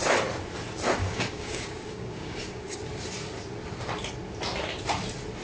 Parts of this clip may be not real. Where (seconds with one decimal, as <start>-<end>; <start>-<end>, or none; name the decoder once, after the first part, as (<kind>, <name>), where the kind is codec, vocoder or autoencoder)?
1.0-2.8 (codec, DAC)